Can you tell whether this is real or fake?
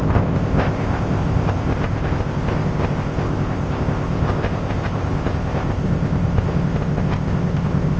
fake